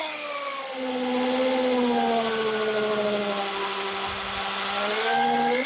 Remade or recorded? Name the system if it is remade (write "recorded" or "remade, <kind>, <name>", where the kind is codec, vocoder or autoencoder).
recorded